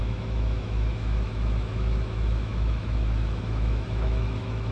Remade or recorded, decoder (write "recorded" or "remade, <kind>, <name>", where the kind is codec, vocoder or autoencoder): remade, autoencoder, DAC-VAE